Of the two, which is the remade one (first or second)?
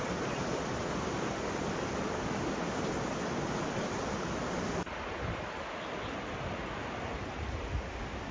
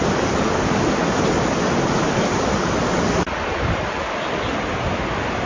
second